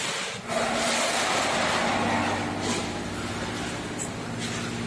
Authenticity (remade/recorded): recorded